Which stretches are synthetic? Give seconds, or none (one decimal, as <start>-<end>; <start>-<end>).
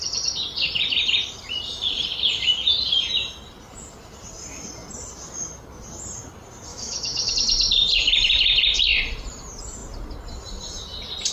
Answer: 6.7-7.3